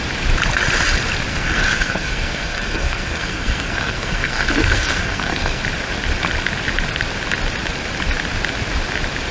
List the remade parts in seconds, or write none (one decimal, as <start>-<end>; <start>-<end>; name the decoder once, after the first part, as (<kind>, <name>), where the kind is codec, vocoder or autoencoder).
1.3-5.6 (codec, SNAC)